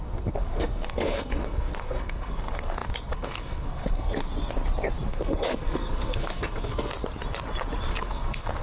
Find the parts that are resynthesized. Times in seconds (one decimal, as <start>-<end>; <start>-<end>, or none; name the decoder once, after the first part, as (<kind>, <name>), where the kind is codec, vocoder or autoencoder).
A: 0.0-4.3 (codec, SNAC); 5.1-6.9; 8.0-8.6